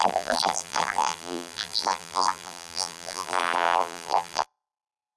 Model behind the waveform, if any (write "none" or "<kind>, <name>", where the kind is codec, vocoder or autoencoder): vocoder, BigVGAN v2